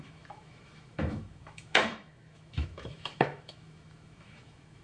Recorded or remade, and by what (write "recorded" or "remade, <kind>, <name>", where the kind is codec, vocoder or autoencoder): remade, autoencoder, DAC-VAE